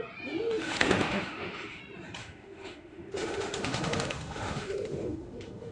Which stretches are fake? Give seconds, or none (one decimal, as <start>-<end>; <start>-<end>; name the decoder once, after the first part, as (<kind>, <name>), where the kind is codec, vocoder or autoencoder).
0.5-1.8 (autoencoder, DAC-VAE); 2.2-5.7